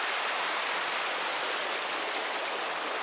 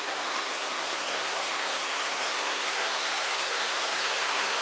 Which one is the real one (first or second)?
first